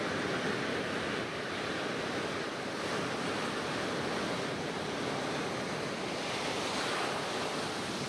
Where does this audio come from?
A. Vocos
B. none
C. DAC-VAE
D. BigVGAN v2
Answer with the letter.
B